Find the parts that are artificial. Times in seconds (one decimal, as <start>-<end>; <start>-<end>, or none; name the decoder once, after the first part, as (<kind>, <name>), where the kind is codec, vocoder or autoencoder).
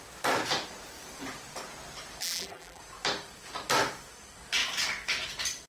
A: 2.2-2.8 (vocoder, BigVGAN v2)